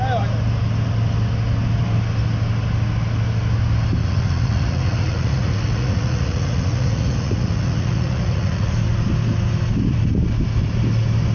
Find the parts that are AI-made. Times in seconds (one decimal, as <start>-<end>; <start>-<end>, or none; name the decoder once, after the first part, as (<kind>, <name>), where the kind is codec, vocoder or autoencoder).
4.0-8.7 (vocoder, Vocos)